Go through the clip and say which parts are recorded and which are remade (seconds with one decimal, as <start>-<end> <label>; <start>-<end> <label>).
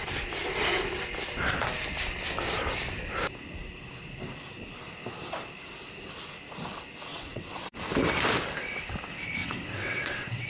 0.0-7.1 recorded; 7.1-7.7 remade; 7.7-9.4 recorded; 9.4-10.5 remade